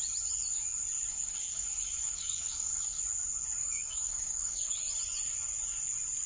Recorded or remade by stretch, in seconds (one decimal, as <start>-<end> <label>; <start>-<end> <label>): 0.0-1.1 recorded; 1.1-3.0 remade; 3.0-3.6 recorded; 3.6-4.8 remade; 4.8-6.3 recorded